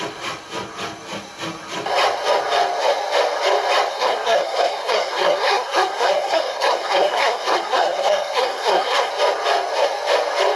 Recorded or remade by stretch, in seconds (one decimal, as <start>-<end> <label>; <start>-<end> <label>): 0.0-3.9 recorded; 3.9-9.1 remade; 9.1-10.6 recorded